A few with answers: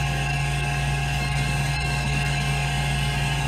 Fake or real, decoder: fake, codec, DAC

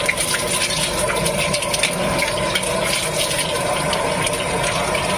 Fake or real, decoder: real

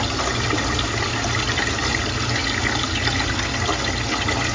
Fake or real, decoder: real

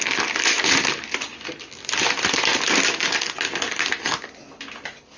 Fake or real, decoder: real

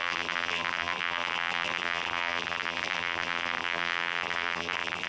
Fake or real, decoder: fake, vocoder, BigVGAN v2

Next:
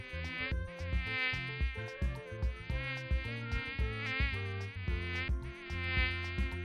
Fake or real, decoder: real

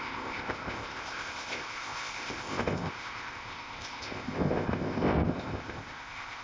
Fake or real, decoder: fake, codec, ZipCodec